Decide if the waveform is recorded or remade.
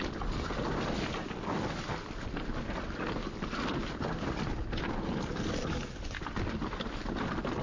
recorded